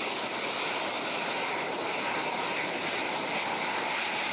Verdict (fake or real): real